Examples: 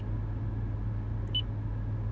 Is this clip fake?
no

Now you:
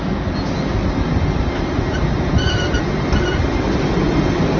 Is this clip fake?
no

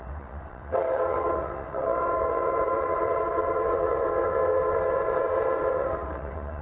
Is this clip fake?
yes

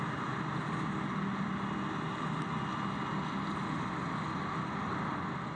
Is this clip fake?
no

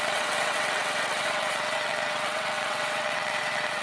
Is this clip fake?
yes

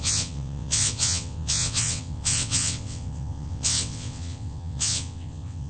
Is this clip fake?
yes